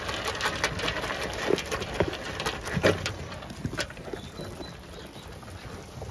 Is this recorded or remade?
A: recorded